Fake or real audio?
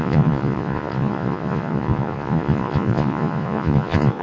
fake